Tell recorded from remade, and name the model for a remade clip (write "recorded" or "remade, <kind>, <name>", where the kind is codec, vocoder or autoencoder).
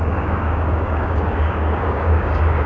remade, codec, DAC